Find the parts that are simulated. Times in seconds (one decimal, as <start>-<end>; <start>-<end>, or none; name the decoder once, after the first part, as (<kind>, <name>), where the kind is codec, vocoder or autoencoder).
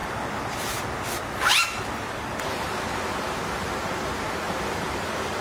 1.8-3.4 (vocoder, BigVGAN v2); 4.6-5.4